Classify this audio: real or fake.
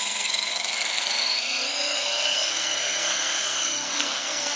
fake